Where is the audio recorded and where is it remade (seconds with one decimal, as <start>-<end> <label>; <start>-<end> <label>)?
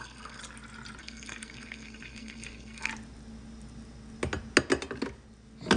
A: 0.0-0.4 remade; 0.4-1.0 recorded; 1.0-2.9 remade; 2.9-5.8 recorded